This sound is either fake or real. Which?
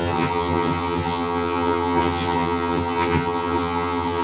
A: fake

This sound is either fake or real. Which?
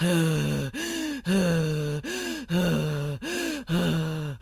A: fake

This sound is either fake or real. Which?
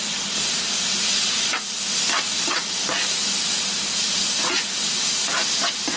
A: real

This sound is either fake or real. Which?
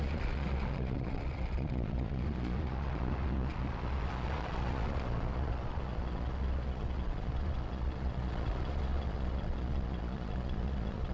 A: fake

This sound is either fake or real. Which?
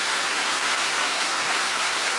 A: fake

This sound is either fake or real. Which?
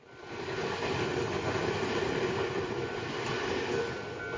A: real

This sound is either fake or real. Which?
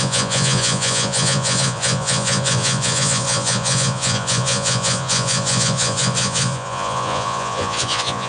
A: fake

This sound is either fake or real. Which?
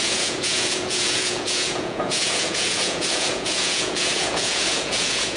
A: fake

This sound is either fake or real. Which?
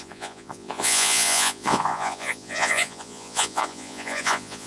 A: fake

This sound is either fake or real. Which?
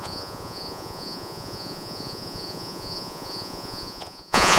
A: fake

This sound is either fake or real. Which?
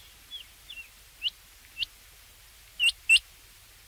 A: real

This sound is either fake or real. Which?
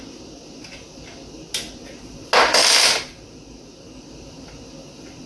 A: real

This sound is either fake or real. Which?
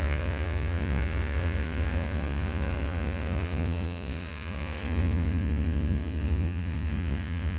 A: fake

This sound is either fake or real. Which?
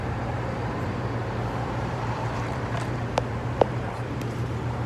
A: fake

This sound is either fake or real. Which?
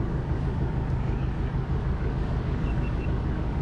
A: fake